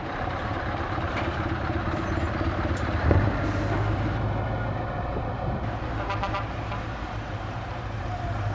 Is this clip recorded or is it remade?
remade